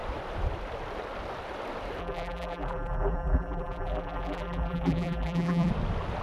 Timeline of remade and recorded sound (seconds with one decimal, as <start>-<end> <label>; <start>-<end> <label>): 0.0-2.0 recorded; 2.0-5.7 remade; 5.7-6.2 recorded